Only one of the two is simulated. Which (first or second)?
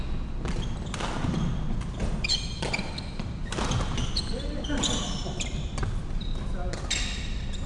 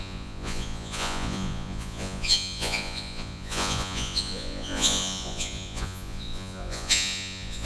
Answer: second